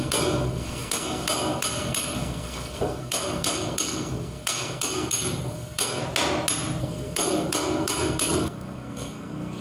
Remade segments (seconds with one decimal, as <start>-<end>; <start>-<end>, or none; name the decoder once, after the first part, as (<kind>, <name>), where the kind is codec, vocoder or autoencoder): 0.0-6.0 (codec, SNAC); 6.8-9.6